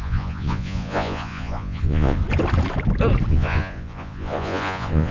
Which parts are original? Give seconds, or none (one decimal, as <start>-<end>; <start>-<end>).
2.2-3.3